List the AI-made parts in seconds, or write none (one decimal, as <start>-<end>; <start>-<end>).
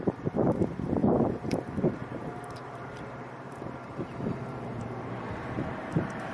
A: 0.0-6.3